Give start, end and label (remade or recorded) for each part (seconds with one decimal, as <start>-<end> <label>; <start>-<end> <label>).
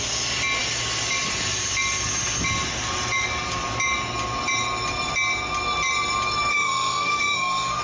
0.0-6.5 recorded; 6.5-7.8 remade